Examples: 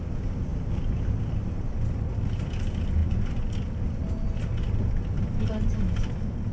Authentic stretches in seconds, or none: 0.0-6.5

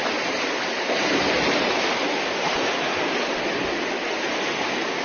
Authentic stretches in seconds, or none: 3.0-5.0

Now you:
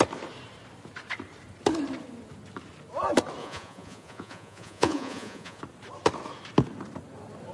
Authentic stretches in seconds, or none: 0.0-3.4; 5.6-7.5

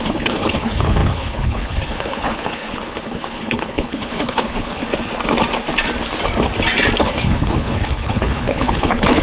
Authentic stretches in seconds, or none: 4.8-7.0

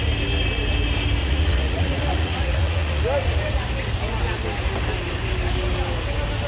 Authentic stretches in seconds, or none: 0.0-1.2; 3.0-6.5

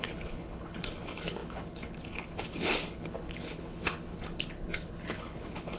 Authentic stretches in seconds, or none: none

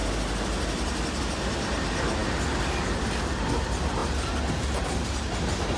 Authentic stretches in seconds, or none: 0.0-5.8

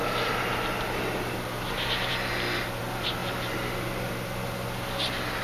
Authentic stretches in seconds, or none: 0.0-5.4